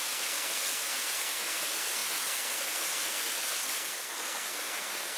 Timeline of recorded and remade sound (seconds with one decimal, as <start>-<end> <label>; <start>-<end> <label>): 0.0-5.2 remade